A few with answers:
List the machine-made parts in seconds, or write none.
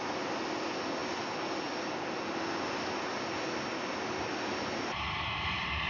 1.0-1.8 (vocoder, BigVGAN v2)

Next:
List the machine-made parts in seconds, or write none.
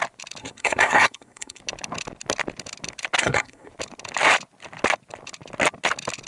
0.4-1.6 (codec, SNAC); 3.2-3.7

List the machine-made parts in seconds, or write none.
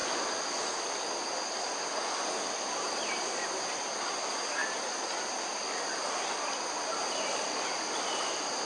none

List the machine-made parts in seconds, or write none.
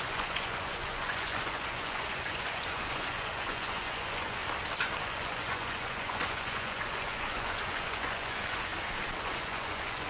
0.0-4.4 (vocoder, Vocos); 5.0-8.7; 9.2-10.1